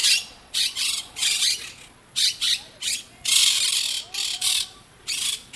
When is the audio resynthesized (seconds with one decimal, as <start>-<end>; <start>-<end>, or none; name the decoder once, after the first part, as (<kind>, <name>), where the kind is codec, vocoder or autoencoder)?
0.0-3.4 (vocoder, Vocos); 4.4-5.6